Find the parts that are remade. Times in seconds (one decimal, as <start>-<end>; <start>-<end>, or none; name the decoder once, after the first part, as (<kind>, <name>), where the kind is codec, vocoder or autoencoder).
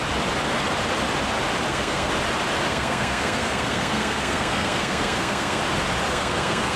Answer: 1.7-2.1 (codec, SNAC); 2.7-5.6; 6.1-6.8